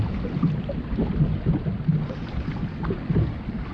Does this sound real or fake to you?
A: real